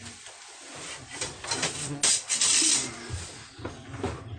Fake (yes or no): no